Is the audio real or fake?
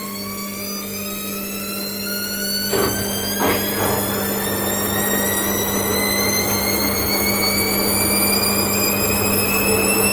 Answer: real